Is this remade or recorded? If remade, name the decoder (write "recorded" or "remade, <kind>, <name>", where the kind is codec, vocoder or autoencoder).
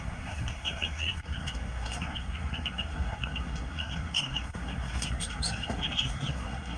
remade, codec, SNAC